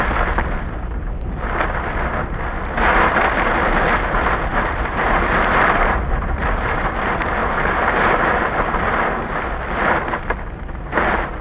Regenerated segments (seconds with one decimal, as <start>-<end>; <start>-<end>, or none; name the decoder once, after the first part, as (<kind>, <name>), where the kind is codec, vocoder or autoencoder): 4.5-6.9 (vocoder, BigVGAN v2); 7.4-8.9